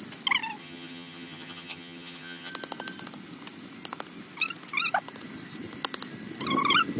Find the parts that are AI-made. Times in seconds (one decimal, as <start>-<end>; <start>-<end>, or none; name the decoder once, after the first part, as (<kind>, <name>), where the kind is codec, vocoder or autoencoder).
0.6-2.5 (vocoder, HiFi-GAN)

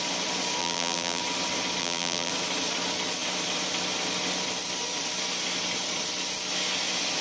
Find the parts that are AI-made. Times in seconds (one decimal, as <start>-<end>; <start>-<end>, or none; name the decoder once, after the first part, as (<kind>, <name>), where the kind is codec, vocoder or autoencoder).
0.6-1.2 (vocoder, BigVGAN v2); 1.8-2.3

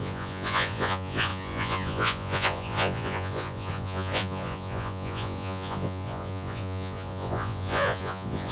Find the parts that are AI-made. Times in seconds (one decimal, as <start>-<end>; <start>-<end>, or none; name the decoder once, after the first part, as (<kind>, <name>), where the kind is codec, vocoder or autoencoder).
0.0-8.5 (vocoder, Vocos)

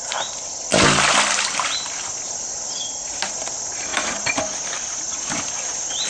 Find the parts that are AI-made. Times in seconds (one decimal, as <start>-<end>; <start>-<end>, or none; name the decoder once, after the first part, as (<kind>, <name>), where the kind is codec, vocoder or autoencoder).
none

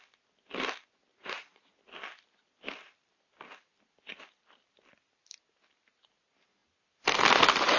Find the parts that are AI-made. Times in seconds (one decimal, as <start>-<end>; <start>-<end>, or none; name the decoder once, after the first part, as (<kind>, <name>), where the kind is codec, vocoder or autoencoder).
1.1-1.7 (vocoder, Vocos)

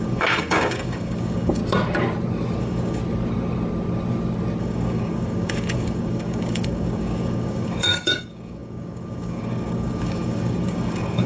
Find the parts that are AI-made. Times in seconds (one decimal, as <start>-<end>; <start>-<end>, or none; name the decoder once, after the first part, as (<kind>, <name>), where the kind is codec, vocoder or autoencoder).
0.0-1.6 (codec, DAC); 2.6-3.0; 4.6-11.3

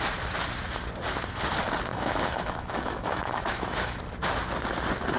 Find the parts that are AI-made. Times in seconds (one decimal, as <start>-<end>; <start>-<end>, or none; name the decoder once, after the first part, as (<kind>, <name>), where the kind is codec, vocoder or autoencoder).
1.9-4.0 (autoencoder, DAC-VAE)

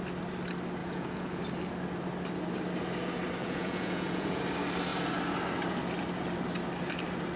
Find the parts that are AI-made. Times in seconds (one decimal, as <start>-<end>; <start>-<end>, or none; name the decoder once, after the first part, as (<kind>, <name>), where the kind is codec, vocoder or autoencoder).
0.8-1.4 (vocoder, Vocos); 3.4-4.4